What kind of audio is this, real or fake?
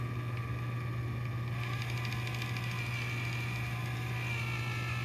real